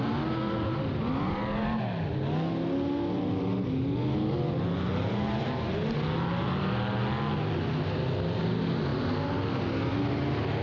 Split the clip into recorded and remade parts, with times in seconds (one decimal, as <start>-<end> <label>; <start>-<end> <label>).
0.0-10.6 recorded